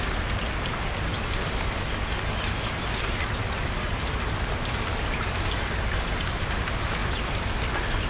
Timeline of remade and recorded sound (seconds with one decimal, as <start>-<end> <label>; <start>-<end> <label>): 0.0-1.1 remade; 1.1-3.0 recorded; 3.0-8.1 remade